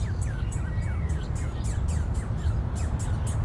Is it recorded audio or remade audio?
recorded